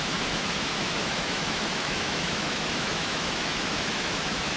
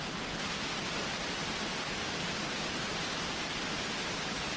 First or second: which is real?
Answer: second